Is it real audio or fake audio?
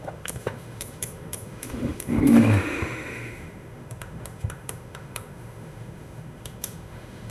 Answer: fake